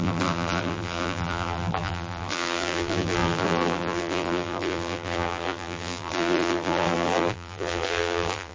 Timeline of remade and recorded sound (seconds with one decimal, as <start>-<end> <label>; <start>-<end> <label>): 0.0-8.5 remade